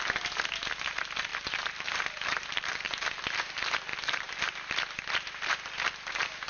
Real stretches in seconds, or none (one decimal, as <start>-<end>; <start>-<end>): 0.0-1.3; 3.2-3.9; 4.4-6.5